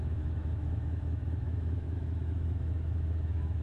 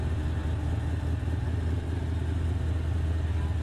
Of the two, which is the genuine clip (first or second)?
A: second